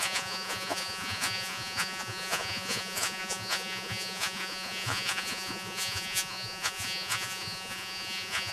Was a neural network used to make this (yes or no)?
yes